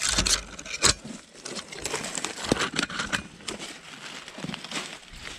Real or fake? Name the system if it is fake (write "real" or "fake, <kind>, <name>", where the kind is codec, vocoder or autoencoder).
real